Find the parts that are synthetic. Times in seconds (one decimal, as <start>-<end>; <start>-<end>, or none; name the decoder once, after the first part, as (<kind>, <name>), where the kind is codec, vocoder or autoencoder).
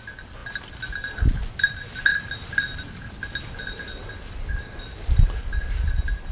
none